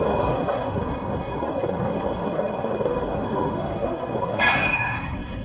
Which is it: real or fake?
fake